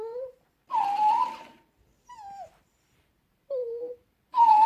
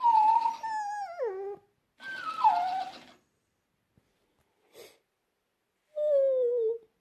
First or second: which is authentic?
second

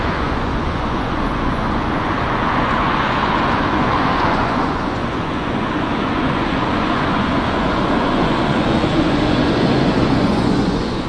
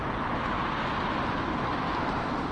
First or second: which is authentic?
second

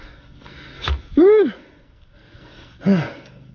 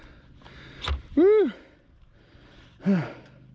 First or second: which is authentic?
second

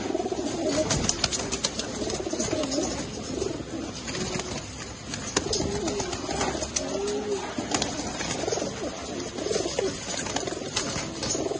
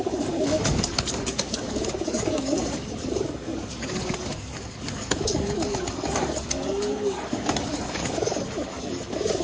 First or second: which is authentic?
first